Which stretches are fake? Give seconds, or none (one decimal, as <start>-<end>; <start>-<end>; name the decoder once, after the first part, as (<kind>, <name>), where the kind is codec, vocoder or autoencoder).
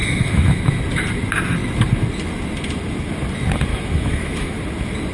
0.0-0.7 (autoencoder, DAC-VAE); 3.7-4.6